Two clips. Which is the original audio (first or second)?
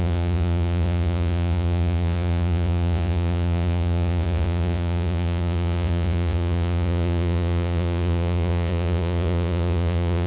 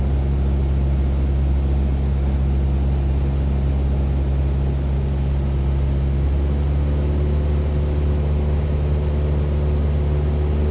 second